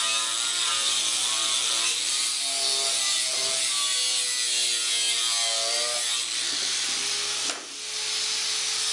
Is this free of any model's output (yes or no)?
yes